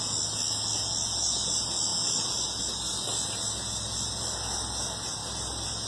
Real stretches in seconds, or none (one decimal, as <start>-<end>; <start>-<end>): 0.0-5.9

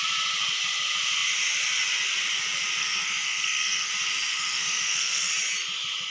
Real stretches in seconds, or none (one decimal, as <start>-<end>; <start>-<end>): 0.0-2.8; 3.9-4.3; 5.3-6.1

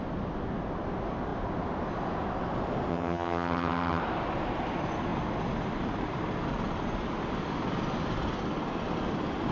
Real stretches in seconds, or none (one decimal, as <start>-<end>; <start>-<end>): 0.0-2.9; 4.0-9.5

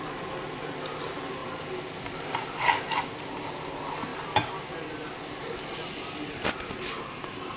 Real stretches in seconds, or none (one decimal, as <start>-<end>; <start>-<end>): 0.0-7.6

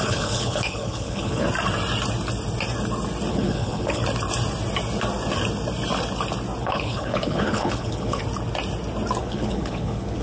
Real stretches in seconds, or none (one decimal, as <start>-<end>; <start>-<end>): 1.4-3.3; 4.0-6.6; 8.2-9.2

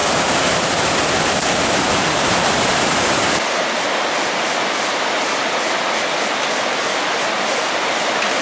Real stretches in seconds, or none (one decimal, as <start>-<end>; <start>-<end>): 3.3-8.4

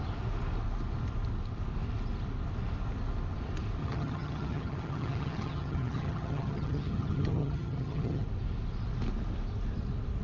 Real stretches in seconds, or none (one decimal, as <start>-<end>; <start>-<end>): 0.0-3.8; 8.2-10.2

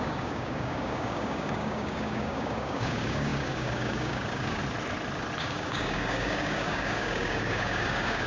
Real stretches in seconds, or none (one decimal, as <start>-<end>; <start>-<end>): 4.6-5.4